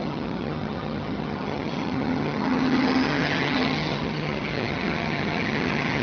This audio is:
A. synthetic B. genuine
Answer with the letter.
A